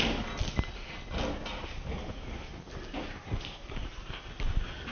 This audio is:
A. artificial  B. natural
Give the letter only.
B